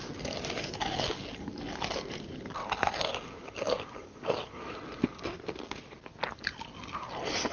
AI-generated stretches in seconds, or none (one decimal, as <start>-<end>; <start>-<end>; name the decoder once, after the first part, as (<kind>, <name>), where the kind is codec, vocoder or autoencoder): 0.0-1.5 (codec, DAC); 3.1-4.8